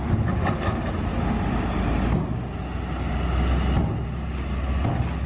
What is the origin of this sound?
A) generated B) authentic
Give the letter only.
B